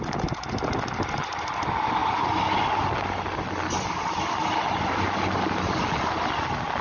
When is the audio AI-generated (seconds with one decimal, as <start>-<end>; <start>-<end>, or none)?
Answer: none

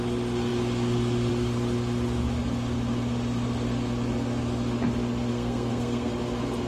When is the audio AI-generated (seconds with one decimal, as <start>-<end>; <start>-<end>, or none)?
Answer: 5.3-6.1

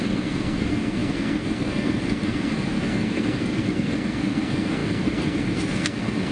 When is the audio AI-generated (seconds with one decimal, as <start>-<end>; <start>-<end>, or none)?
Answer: 0.0-6.3

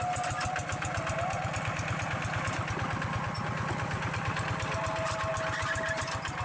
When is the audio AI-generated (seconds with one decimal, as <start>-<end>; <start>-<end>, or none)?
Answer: none

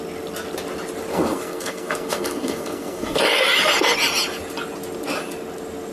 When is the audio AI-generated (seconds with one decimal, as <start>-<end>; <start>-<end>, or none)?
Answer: 1.1-3.2

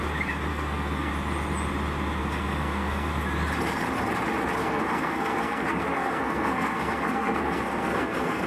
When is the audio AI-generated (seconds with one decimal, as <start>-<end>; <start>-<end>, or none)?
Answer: 0.5-1.1; 2.2-3.1; 4.6-8.5

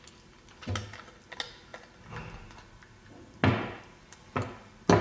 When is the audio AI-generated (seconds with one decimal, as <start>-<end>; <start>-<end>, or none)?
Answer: none

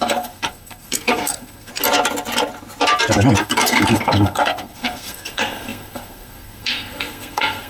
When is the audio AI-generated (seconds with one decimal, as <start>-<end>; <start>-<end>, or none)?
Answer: 0.0-1.7; 3.4-7.7